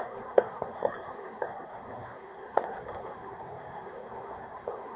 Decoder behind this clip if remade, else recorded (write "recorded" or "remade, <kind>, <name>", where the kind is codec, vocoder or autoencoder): remade, codec, SNAC